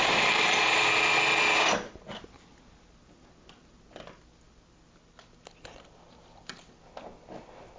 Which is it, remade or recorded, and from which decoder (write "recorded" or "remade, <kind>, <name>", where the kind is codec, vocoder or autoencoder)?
recorded